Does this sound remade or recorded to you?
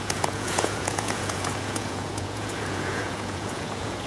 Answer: remade